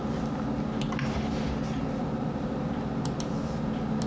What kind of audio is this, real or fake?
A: real